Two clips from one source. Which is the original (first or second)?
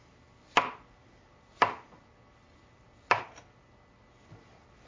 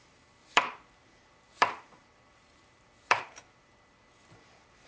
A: first